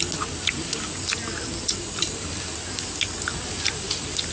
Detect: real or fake real